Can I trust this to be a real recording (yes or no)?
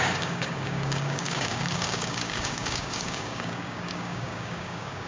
no